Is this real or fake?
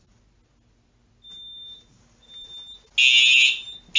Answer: real